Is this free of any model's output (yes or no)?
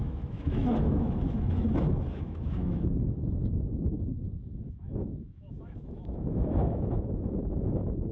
no